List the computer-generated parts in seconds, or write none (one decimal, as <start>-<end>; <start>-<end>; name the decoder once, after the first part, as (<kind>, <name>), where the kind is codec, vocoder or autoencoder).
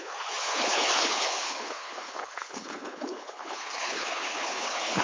0.0-5.0 (codec, HILCodec)